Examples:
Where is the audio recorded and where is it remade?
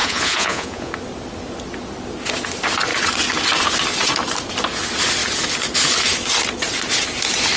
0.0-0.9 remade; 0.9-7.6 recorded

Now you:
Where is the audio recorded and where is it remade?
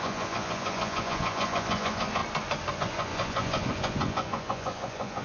0.0-2.2 remade; 2.2-2.7 recorded; 2.7-5.2 remade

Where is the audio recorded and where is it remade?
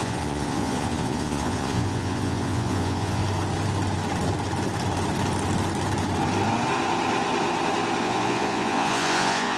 0.0-3.2 remade; 3.2-8.0 recorded; 8.0-9.6 remade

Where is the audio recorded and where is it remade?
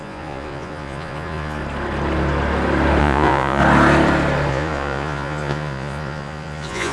0.0-1.6 remade; 1.6-3.0 recorded; 3.0-3.6 remade; 3.6-4.5 recorded; 4.5-6.9 remade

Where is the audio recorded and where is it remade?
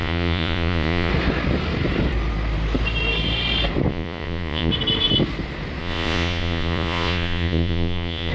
0.0-1.1 remade; 1.1-3.9 recorded; 3.9-4.7 remade; 4.7-5.8 recorded; 5.8-8.3 remade